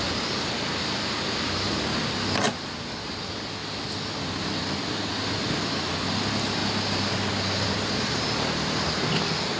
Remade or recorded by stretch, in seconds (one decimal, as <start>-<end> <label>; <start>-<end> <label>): 0.0-9.6 recorded